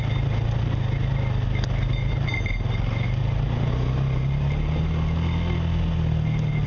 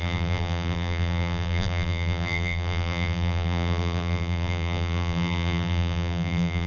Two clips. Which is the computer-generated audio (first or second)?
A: second